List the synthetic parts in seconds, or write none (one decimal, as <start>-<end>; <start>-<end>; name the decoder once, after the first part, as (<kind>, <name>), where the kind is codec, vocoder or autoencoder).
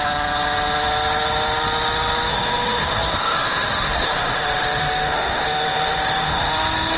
2.3-6.5 (autoencoder, DAC-VAE)